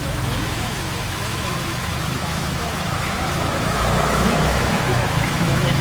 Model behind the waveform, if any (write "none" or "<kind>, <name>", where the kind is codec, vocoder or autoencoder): autoencoder, DAC-VAE